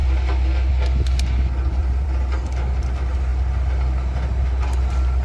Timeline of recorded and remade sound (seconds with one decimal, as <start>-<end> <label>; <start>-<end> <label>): 0.0-1.8 recorded; 1.8-2.4 remade; 2.4-5.2 recorded